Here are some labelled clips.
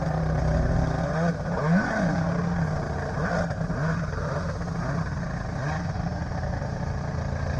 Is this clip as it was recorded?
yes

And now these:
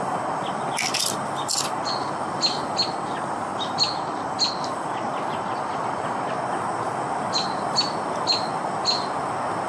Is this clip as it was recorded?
yes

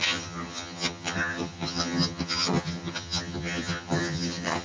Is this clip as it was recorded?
no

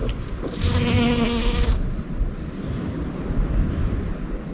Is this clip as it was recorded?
yes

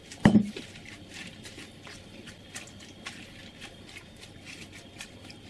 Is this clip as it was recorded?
yes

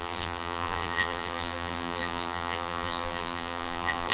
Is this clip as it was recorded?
no